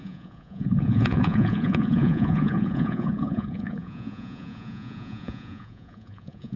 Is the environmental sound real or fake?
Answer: fake